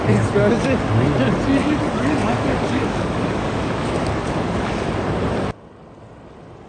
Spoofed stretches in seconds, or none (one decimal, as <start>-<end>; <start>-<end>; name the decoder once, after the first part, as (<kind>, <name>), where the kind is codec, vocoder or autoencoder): 1.6-4.9 (codec, DAC)